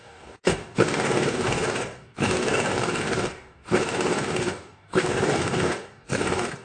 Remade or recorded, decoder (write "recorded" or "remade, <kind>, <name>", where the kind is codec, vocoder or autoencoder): remade, codec, DAC